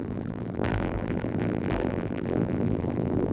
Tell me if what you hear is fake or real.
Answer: fake